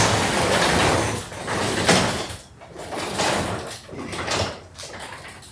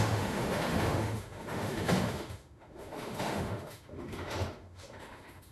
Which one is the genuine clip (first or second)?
first